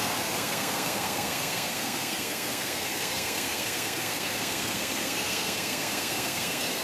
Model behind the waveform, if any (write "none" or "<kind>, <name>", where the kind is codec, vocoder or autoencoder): codec, SNAC